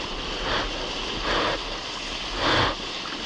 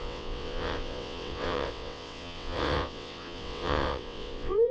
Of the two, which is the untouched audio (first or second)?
first